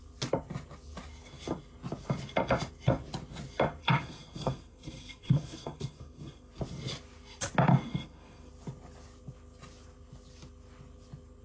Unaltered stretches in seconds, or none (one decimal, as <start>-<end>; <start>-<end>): 0.0-3.8; 6.5-7.9; 8.5-11.4